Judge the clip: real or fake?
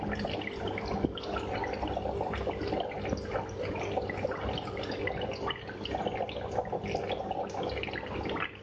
real